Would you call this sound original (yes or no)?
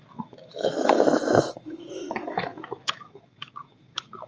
no